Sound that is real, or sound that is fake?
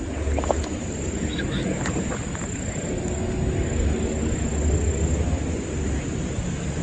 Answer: real